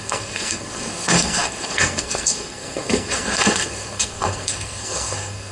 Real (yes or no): no